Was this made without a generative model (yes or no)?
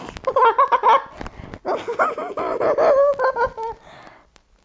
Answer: yes